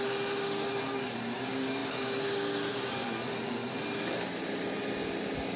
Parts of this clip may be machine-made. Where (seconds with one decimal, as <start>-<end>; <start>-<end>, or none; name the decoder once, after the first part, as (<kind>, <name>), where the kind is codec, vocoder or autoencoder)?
none

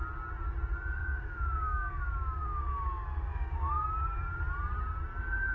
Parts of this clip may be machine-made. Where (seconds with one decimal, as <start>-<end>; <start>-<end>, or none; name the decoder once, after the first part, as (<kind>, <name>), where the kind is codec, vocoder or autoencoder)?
1.0-3.7 (codec, DAC)